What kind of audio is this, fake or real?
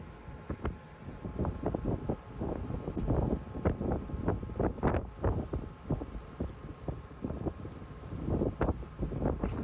real